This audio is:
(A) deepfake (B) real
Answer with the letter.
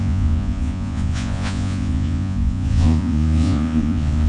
A